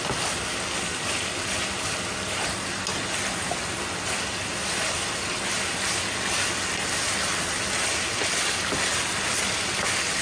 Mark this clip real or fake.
real